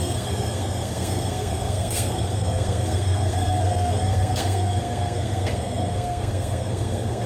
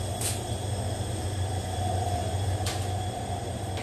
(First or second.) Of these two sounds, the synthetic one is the first